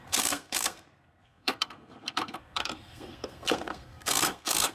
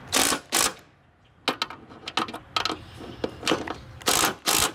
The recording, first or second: second